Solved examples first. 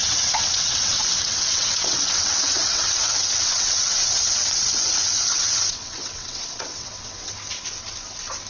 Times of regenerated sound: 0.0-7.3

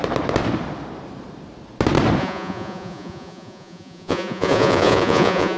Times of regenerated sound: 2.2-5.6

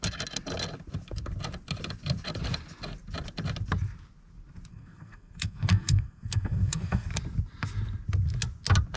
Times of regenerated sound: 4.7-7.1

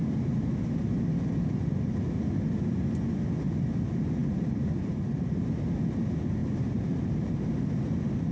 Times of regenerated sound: 4.2-5.3; 6.4-7.6

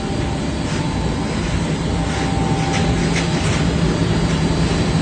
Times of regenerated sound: none

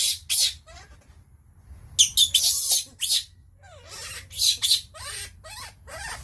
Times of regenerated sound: 3.4-6.2